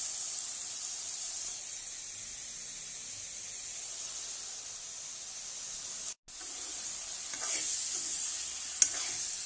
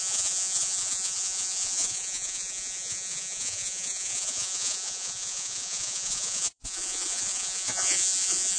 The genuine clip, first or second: first